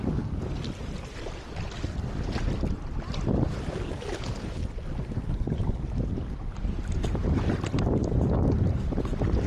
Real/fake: real